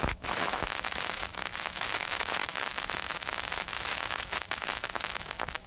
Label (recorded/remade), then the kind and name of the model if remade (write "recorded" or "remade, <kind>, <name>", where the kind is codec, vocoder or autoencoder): remade, autoencoder, DAC-VAE